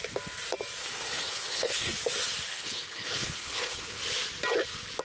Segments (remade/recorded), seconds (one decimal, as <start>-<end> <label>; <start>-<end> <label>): 0.0-0.8 recorded; 0.8-1.9 remade; 1.9-2.5 recorded; 2.5-4.0 remade; 4.0-5.0 recorded